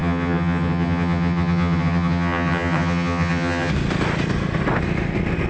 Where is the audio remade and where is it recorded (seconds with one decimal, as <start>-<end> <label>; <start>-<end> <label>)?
0.0-3.7 remade; 3.7-5.5 recorded

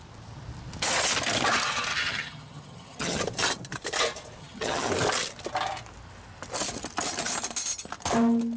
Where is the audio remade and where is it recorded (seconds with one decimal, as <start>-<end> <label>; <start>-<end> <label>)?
0.0-1.9 recorded; 1.9-3.2 remade; 3.2-4.4 recorded; 4.4-4.9 remade; 4.9-8.6 recorded

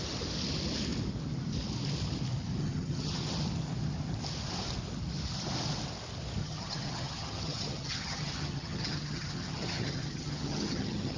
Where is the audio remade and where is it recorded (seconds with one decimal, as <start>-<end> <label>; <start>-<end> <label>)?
0.0-2.6 recorded; 2.6-3.2 remade; 3.2-6.4 recorded; 6.4-11.2 remade